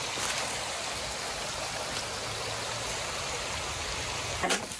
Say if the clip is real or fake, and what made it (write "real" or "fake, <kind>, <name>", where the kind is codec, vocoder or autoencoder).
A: real